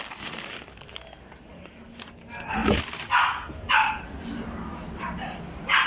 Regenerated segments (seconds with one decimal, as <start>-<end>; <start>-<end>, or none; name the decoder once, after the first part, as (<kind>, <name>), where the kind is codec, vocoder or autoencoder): 0.0-1.5 (vocoder, BigVGAN v2)